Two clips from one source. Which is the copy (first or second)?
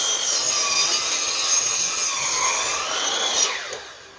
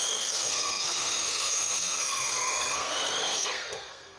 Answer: second